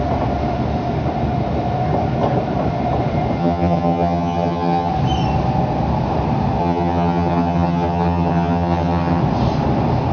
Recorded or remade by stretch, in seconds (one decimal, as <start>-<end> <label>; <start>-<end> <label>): 0.0-3.4 recorded; 3.4-4.9 remade; 4.9-6.6 recorded; 6.6-9.2 remade; 9.2-10.1 recorded